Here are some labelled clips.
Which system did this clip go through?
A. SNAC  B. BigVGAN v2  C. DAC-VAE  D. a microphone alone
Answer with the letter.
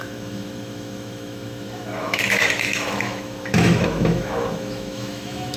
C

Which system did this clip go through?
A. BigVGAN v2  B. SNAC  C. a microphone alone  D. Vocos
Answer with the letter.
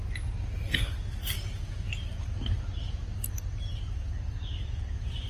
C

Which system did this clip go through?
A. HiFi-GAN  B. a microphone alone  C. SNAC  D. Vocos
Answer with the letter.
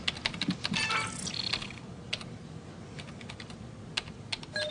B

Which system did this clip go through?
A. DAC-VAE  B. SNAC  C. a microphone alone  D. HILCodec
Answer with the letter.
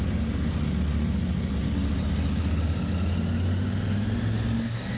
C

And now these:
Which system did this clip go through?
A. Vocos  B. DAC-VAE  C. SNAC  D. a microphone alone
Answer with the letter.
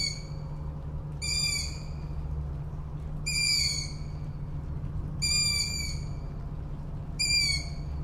D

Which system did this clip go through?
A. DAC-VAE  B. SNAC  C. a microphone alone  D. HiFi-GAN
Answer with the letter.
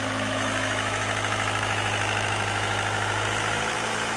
A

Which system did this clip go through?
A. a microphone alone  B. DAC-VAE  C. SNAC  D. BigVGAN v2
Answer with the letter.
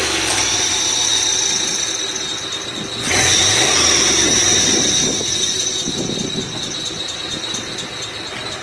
A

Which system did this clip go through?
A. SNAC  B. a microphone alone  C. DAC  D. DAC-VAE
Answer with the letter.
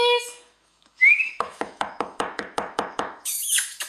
D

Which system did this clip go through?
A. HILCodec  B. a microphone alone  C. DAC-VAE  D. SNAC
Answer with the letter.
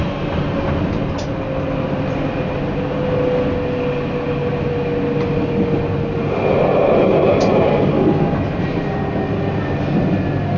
B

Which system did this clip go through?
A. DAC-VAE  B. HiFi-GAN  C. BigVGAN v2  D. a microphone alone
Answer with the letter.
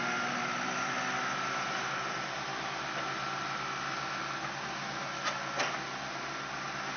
D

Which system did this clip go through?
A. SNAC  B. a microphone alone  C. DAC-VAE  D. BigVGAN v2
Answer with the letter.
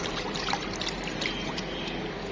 B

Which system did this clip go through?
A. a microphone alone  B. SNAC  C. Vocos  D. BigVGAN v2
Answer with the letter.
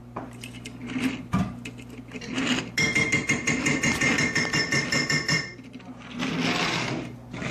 D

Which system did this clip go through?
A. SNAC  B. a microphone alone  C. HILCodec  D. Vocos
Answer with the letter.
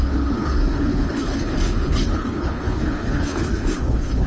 C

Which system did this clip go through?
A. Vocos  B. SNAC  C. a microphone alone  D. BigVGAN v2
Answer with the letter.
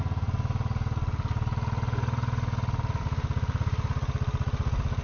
C